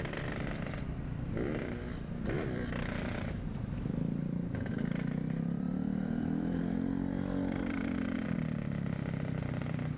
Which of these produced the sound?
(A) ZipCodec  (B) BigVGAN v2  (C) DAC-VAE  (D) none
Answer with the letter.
B